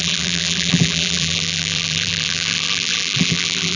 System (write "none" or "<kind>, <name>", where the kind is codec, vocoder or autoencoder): vocoder, BigVGAN v2